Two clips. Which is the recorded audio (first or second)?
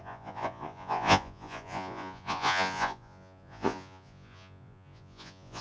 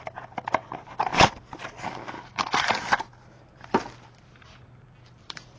second